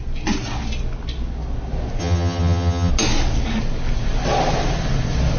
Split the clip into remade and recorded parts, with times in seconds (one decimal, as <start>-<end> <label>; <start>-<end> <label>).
0.0-2.0 recorded; 2.0-2.9 remade; 2.9-5.4 recorded